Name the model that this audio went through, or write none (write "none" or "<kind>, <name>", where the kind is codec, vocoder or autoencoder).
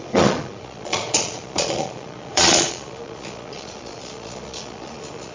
vocoder, Vocos